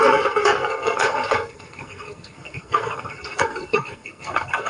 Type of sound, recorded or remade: remade